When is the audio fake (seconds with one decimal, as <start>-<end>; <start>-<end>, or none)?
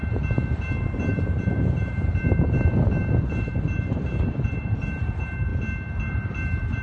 0.0-5.5; 6.1-6.8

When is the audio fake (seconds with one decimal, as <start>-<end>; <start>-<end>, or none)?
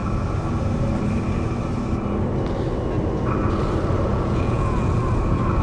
4.1-5.0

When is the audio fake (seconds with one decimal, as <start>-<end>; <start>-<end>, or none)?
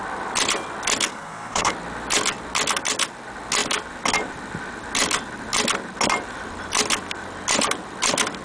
1.1-1.7